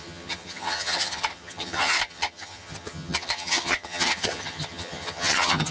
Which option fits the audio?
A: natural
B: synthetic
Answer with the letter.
B